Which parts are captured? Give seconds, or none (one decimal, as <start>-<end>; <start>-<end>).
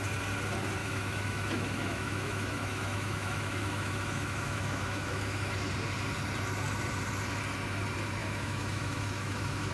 0.0-0.8; 5.7-8.2